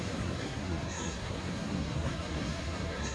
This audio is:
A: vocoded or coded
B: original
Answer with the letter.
A